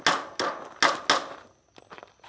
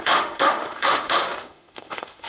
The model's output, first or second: second